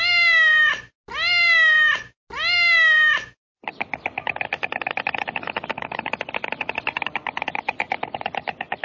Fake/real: real